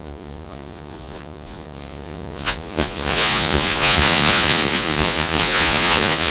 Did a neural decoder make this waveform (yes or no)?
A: yes